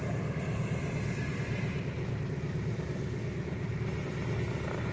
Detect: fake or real real